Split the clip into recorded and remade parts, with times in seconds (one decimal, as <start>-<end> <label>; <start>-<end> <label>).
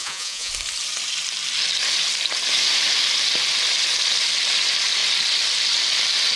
0.0-0.5 remade; 0.5-6.4 recorded